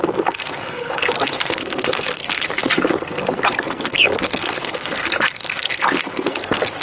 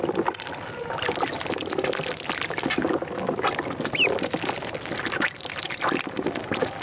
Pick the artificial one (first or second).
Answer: first